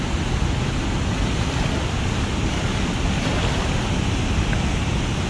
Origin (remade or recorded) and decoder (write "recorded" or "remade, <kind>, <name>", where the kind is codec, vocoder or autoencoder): recorded